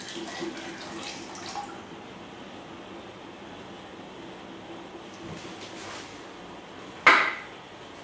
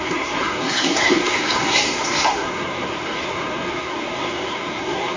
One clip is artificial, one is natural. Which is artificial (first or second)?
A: second